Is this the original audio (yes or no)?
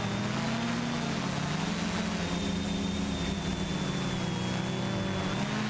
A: yes